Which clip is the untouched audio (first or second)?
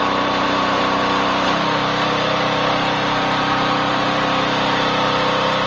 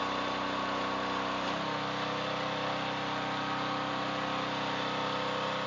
second